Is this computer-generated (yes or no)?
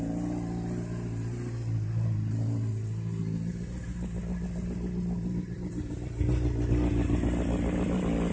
no